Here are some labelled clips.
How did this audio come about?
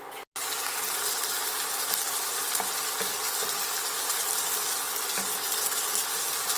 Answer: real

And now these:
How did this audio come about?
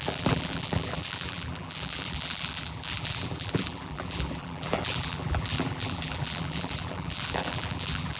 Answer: fake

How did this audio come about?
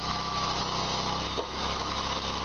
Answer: fake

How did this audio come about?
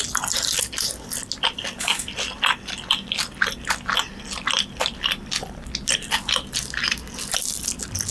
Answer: real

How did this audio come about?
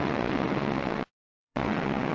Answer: fake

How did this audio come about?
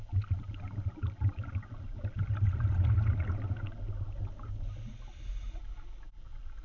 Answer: real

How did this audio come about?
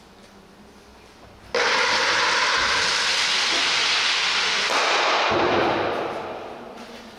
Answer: real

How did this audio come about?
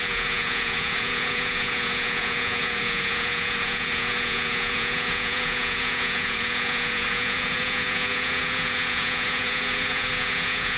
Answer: fake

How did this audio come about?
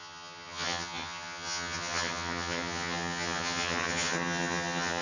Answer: fake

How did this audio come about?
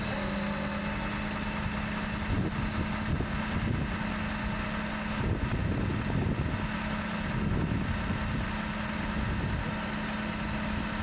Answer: real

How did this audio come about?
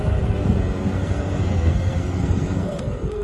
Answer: fake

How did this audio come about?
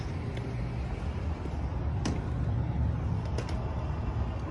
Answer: real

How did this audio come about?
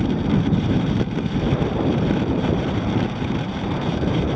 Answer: fake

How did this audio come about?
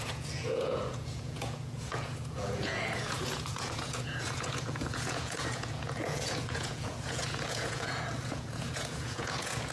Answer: fake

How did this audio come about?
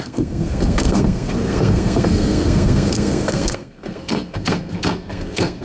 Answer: fake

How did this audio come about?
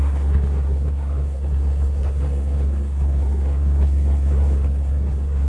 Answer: fake